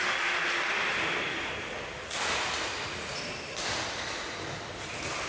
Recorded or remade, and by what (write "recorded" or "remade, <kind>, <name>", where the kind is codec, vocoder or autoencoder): recorded